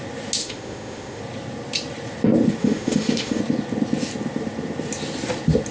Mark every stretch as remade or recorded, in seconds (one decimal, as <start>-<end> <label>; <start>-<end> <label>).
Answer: 0.0-0.4 recorded; 0.4-1.2 remade; 1.2-2.6 recorded; 2.6-3.4 remade; 3.4-5.7 recorded